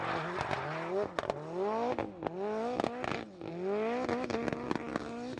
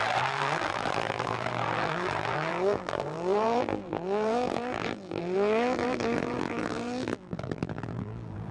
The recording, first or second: first